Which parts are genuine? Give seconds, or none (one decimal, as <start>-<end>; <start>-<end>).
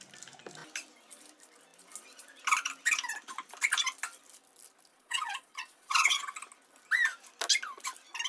0.0-4.9; 6.2-8.3